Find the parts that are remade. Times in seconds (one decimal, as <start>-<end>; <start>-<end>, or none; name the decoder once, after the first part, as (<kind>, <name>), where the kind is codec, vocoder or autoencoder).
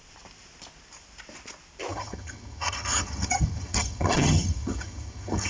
1.9-5.5 (vocoder, HiFi-GAN)